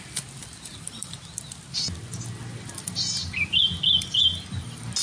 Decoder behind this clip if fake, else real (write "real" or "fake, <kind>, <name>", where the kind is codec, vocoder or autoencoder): real